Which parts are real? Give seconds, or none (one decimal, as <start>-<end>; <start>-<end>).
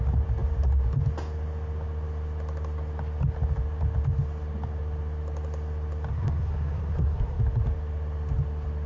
0.0-6.1; 7.4-8.9